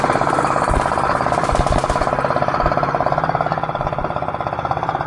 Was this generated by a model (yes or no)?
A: no